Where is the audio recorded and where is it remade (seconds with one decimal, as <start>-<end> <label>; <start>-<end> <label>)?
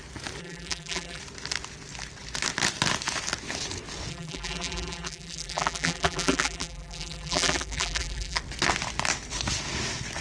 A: 0.0-0.4 recorded; 0.4-1.2 remade; 1.2-4.1 recorded; 4.1-8.4 remade; 8.4-10.2 recorded